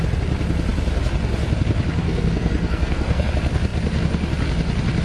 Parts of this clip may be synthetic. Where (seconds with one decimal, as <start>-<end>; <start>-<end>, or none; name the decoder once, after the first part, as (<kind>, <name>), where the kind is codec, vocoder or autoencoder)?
2.0-3.3 (codec, SNAC)